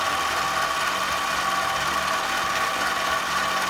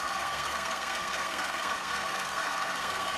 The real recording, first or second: first